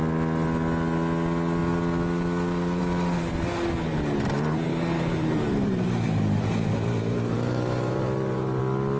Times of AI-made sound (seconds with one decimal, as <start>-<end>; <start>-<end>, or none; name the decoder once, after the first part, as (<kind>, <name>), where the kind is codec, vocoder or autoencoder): 4.7-8.6 (vocoder, BigVGAN v2)